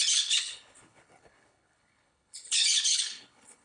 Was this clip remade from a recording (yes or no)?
yes